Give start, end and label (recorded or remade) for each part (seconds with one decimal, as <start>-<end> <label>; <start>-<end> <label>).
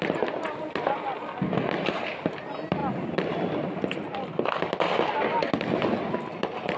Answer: 0.0-6.8 recorded